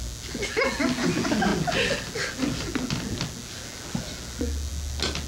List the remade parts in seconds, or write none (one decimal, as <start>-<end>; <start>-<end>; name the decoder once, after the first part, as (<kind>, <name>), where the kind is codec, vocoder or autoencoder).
none